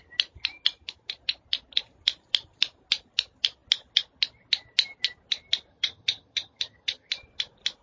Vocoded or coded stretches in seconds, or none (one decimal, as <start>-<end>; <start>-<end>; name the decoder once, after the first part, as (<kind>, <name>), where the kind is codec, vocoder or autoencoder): 5.7-7.1 (vocoder, HiFi-GAN)